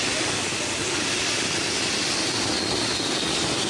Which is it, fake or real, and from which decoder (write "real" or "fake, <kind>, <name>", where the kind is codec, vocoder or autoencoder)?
fake, vocoder, BigVGAN v2